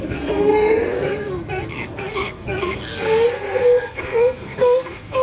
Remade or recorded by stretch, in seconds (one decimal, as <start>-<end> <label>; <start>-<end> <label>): 0.0-5.2 remade